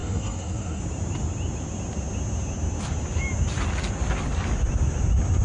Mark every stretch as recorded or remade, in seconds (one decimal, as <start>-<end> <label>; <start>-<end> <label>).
0.0-0.8 remade; 0.8-5.4 recorded